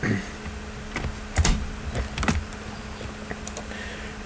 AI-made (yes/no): no